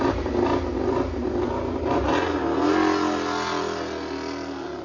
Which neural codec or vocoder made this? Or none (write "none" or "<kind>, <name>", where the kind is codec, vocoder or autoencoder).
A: none